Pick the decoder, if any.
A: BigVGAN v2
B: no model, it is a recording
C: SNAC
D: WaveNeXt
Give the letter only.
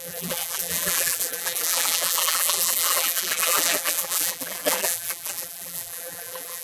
A